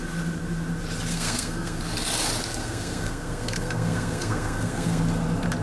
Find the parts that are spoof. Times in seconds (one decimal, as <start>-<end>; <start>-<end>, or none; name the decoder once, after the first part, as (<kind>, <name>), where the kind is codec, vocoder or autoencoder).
1.1-1.8 (codec, SNAC); 2.6-5.0